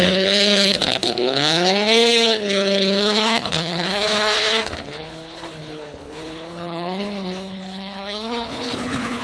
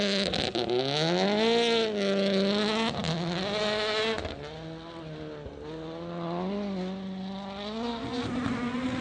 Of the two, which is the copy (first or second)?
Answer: first